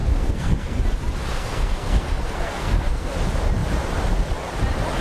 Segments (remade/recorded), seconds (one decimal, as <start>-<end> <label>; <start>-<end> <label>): 0.0-0.8 remade; 0.8-1.3 recorded; 1.3-3.1 remade; 3.1-5.0 recorded